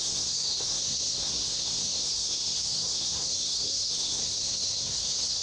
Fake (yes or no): yes